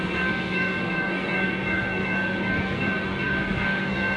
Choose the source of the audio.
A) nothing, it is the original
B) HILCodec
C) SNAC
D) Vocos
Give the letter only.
C